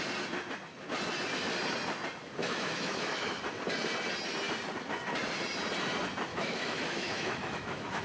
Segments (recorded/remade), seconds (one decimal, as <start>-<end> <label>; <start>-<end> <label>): 0.0-2.4 recorded; 2.4-3.4 remade; 3.4-6.3 recorded; 6.3-8.0 remade

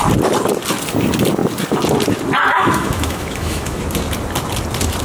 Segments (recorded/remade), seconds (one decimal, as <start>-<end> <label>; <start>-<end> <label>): 0.0-2.6 recorded; 2.6-3.8 remade; 3.8-5.0 recorded

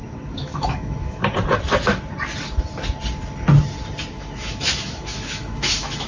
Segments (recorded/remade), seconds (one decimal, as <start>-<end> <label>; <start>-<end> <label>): 0.0-1.2 remade; 1.2-4.1 recorded; 4.1-6.1 remade

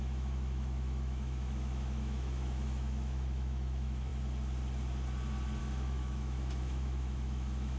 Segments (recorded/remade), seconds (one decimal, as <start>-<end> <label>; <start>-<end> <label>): 0.0-4.1 remade; 4.1-5.6 recorded; 5.6-7.8 remade